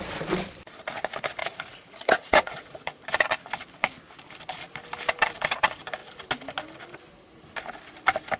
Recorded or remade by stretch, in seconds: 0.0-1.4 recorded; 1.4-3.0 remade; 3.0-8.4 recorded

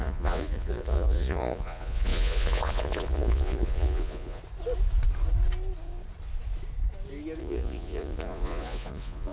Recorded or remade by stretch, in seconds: 0.0-4.4 remade; 4.4-7.4 recorded; 7.4-9.3 remade

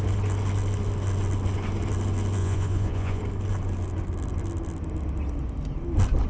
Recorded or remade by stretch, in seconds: 0.0-2.4 recorded; 2.4-3.2 remade; 3.2-6.3 recorded

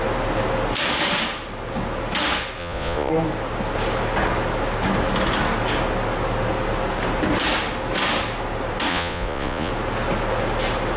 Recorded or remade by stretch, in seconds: 0.0-2.6 recorded; 2.6-3.1 remade; 3.1-8.9 recorded; 8.9-9.7 remade; 9.7-11.0 recorded

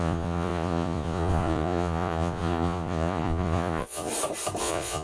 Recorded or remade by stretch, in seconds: 0.0-4.1 remade; 4.1-4.6 recorded; 4.6-5.0 remade

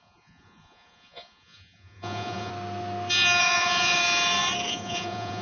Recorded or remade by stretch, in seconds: 0.0-2.5 remade; 2.5-3.4 recorded; 3.4-4.0 remade; 4.0-4.7 recorded; 4.7-5.4 remade

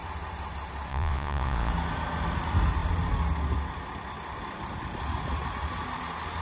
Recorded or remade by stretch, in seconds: 0.0-0.9 recorded; 0.9-1.7 remade; 1.7-6.4 recorded